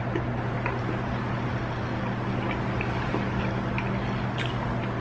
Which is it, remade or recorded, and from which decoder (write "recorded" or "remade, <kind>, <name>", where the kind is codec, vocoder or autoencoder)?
recorded